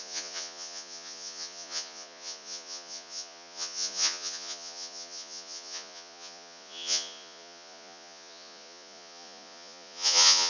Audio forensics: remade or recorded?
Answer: remade